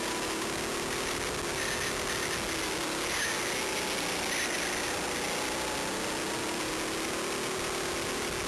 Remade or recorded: recorded